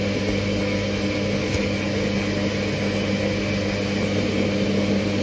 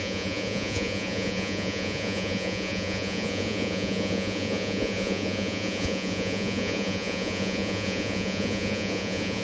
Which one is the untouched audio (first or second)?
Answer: first